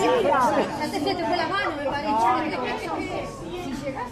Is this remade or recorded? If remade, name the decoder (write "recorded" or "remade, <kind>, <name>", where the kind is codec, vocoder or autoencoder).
recorded